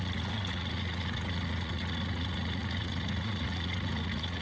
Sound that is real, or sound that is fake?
fake